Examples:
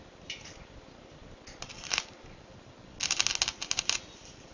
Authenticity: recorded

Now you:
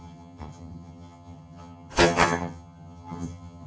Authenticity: remade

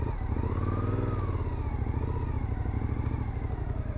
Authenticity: recorded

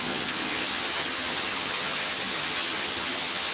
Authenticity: remade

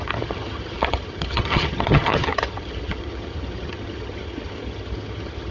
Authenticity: remade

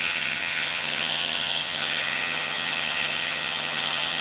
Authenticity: remade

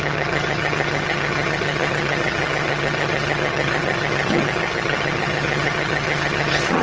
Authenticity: remade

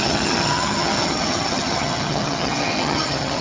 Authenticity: remade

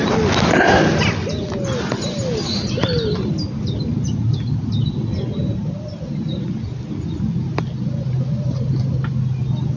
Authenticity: recorded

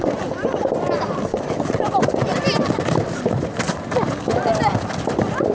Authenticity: recorded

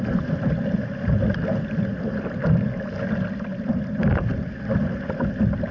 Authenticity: recorded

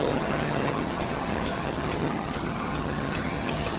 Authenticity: remade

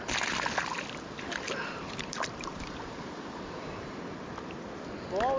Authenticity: recorded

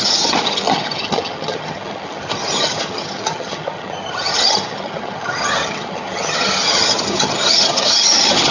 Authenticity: remade